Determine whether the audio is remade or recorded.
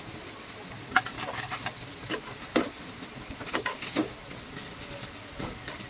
recorded